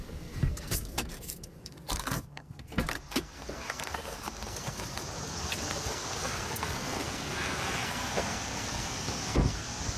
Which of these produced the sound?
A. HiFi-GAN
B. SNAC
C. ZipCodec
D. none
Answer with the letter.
B